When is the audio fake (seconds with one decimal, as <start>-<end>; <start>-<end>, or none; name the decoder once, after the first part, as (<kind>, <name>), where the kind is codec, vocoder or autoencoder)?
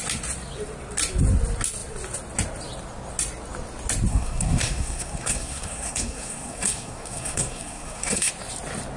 4.1-8.3 (codec, SNAC)